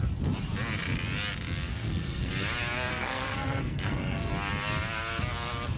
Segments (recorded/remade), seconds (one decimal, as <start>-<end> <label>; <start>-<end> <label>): 0.0-1.7 recorded; 1.7-2.3 remade; 2.3-2.9 recorded; 2.9-4.3 remade; 4.3-5.8 recorded